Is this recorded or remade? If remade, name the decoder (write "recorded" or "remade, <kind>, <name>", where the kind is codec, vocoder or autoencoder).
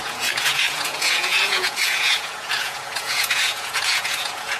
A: remade, vocoder, Vocos